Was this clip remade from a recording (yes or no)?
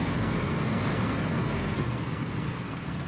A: yes